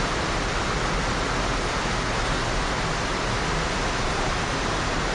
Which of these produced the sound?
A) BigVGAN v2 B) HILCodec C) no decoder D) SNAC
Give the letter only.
C